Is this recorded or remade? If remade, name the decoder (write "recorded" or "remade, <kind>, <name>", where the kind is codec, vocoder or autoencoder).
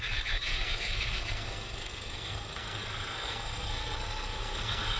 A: remade, codec, SNAC